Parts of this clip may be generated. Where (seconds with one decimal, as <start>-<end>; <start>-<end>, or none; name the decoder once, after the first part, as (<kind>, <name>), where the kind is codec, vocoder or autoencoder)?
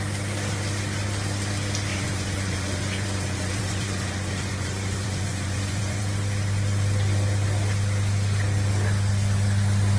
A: 1.9-6.0 (vocoder, Vocos)